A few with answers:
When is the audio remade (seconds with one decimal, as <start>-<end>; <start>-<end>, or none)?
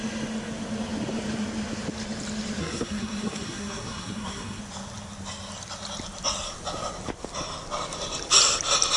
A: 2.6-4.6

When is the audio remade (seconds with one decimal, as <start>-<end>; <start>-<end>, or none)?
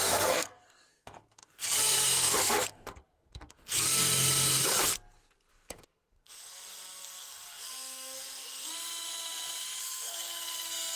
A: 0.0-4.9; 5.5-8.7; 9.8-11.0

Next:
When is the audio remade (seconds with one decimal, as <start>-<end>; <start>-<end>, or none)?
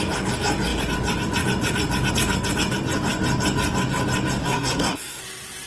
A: 4.4-5.2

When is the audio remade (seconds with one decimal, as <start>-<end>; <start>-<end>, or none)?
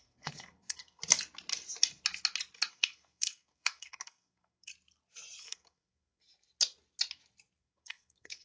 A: 0.0-1.0; 2.7-4.7; 5.4-6.2; 7.6-8.4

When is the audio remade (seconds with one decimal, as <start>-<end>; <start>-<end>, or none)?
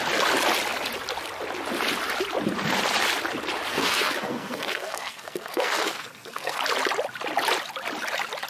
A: 3.7-6.6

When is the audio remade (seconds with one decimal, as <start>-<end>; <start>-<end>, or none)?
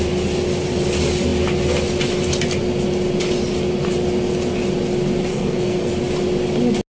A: 5.3-5.9